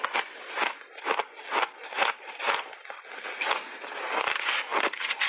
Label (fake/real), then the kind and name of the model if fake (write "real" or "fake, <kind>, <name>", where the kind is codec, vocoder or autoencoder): real